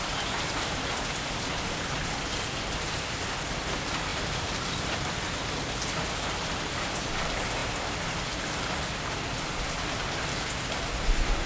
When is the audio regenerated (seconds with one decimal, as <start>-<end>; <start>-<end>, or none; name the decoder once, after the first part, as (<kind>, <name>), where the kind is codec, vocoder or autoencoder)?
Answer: none

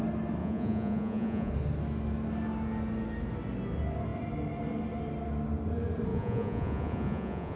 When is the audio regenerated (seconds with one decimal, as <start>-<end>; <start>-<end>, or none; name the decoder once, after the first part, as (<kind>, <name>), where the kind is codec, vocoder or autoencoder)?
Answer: 0.4-1.5 (vocoder, Vocos); 6.1-7.6

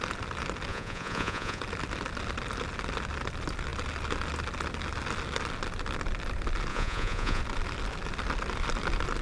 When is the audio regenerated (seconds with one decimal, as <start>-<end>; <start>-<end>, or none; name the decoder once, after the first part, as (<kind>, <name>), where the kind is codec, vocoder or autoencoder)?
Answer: 0.7-1.6 (vocoder, Vocos); 6.7-7.4

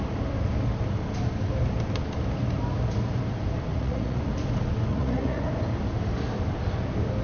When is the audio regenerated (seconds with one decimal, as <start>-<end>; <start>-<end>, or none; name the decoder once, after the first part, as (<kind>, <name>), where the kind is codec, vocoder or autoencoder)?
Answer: 3.7-4.2 (vocoder, Vocos); 4.9-5.5

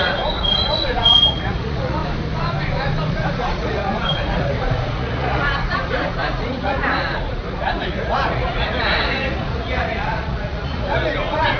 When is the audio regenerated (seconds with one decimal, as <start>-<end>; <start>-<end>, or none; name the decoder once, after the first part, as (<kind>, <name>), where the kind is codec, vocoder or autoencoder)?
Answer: 0.0-2.0 (vocoder, Vocos); 3.1-11.6

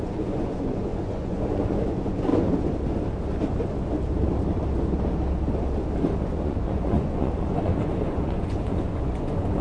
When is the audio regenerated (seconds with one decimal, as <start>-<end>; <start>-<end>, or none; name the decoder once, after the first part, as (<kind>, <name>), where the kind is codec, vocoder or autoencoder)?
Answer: 0.0-2.3 (vocoder, Vocos); 6.2-9.6